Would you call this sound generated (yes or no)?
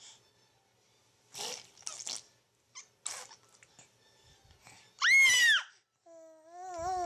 no